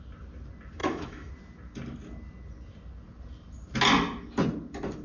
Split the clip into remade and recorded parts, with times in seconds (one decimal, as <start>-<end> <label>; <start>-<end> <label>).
0.0-0.8 recorded; 0.8-1.3 remade; 1.3-5.0 recorded

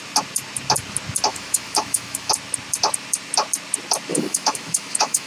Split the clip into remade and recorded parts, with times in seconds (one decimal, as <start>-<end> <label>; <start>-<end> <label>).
0.0-1.3 recorded; 1.3-2.3 remade; 2.3-4.1 recorded; 4.1-5.3 remade

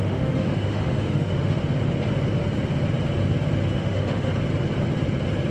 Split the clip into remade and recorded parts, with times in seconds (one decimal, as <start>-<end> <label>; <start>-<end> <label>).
0.0-1.6 remade; 1.6-3.7 recorded; 3.7-4.3 remade; 4.3-5.5 recorded

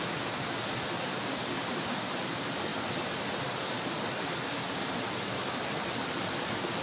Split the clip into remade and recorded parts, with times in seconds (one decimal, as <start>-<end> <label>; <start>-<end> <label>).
0.0-6.8 recorded

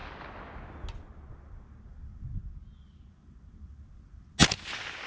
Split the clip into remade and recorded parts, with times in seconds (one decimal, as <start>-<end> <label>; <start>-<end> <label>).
0.0-5.1 recorded

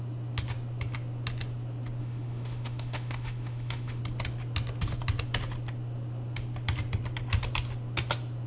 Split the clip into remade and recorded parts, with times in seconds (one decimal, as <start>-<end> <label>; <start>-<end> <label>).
0.0-2.0 recorded; 2.0-4.0 remade; 4.0-8.5 recorded